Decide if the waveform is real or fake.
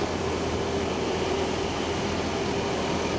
real